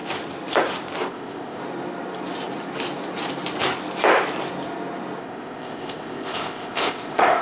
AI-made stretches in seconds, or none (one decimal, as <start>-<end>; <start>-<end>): 1.1-1.6; 5.2-7.4